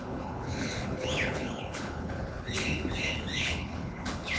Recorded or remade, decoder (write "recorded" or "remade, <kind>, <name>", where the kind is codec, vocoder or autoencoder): remade, codec, HILCodec